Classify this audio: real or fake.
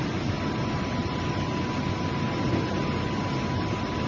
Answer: real